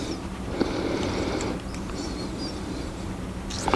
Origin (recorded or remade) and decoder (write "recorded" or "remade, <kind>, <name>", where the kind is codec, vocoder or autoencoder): remade, vocoder, BigVGAN v2